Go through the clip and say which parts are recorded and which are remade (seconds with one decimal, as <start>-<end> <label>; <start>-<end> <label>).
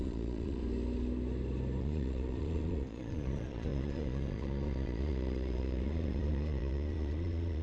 0.0-0.6 remade; 0.6-1.8 recorded; 1.8-7.6 remade